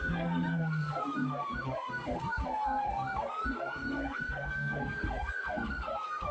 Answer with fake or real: fake